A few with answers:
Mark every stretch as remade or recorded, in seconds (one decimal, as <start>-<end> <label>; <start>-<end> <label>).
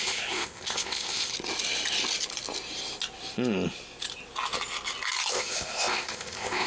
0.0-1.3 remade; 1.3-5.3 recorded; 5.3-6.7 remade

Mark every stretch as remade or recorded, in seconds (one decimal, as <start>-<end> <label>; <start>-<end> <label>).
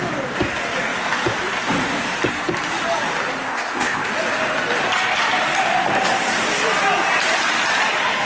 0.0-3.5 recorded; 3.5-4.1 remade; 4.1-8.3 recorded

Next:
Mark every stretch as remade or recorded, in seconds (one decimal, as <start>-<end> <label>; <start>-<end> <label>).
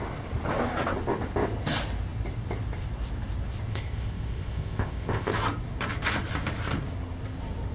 0.0-3.7 recorded; 3.7-5.3 remade; 5.3-7.7 recorded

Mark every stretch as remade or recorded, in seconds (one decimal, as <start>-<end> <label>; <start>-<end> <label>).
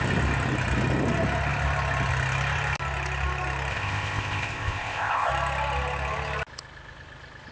0.0-3.7 recorded; 3.7-5.3 remade; 5.3-7.5 recorded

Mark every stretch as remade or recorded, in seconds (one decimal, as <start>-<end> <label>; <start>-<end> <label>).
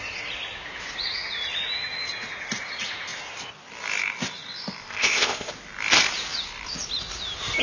0.0-4.8 recorded; 4.8-5.5 remade; 5.5-7.6 recorded